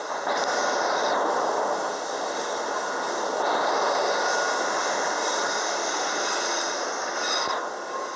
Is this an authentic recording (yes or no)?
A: yes